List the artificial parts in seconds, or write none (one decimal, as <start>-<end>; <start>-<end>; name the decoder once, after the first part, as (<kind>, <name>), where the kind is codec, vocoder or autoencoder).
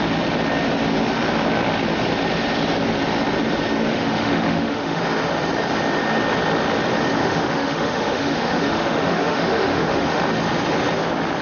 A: 3.9-5.0 (autoencoder, DAC-VAE); 7.2-10.2